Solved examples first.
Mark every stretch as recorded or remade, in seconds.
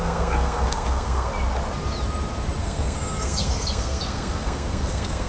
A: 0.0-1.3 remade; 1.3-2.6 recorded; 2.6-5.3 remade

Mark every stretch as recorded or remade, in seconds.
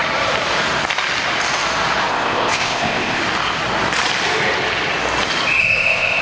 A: 0.0-2.1 recorded; 2.1-3.2 remade; 3.2-5.6 recorded; 5.6-6.2 remade